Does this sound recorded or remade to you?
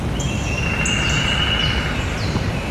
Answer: recorded